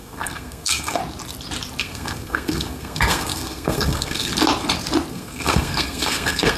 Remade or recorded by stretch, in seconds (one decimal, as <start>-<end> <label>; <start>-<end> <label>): 0.0-1.0 remade; 1.0-1.8 recorded; 1.8-4.3 remade; 4.3-5.1 recorded; 5.1-6.6 remade